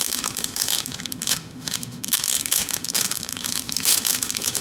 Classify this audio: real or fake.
fake